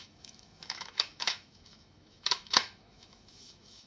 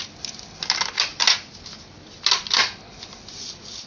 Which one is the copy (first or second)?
first